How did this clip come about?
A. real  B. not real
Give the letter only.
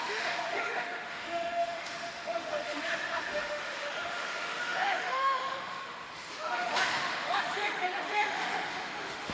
B